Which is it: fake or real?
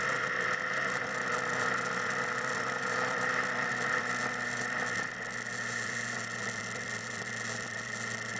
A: fake